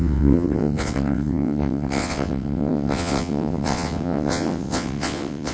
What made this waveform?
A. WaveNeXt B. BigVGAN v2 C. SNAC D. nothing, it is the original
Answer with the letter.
A